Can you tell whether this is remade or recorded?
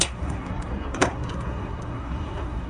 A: remade